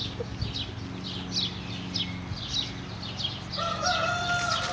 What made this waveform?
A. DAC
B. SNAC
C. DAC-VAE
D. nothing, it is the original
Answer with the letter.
D